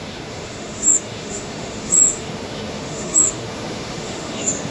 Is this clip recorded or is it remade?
remade